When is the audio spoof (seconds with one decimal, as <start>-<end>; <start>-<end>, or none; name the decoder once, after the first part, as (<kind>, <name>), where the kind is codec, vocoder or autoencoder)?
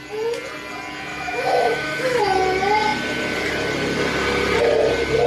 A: 1.1-2.2 (autoencoder, DAC-VAE)